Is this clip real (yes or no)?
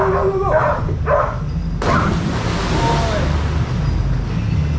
yes